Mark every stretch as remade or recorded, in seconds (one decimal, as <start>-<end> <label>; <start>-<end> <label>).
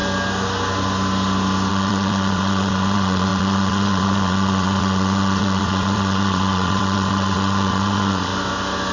0.0-1.7 recorded; 1.7-8.3 remade; 8.3-8.9 recorded